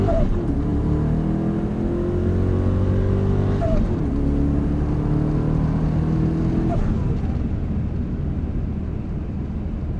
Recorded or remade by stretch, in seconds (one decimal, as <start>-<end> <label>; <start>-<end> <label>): 0.0-10.0 recorded